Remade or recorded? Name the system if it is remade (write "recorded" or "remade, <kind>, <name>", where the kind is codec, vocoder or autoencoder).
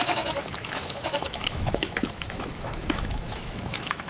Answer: remade, autoencoder, DAC-VAE